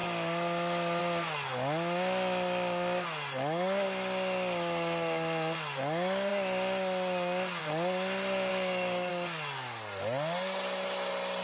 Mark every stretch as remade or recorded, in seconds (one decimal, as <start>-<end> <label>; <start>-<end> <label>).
0.0-8.5 recorded; 8.5-9.1 remade; 9.1-11.4 recorded